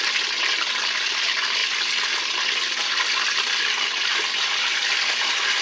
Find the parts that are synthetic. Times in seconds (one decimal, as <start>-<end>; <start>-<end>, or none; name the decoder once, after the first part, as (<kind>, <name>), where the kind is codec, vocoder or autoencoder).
none